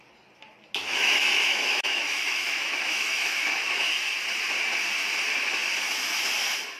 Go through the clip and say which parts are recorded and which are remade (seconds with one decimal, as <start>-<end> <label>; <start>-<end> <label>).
0.0-0.8 recorded; 0.8-4.1 remade; 4.1-6.8 recorded